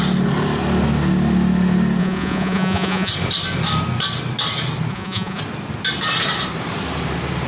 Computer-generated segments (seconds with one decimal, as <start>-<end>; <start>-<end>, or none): 2.0-3.1; 4.9-5.4